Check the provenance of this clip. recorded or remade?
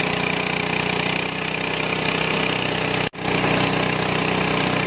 recorded